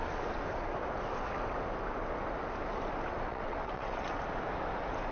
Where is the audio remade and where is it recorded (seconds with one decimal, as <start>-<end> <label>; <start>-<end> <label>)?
0.0-3.3 recorded; 3.3-4.2 remade; 4.2-5.1 recorded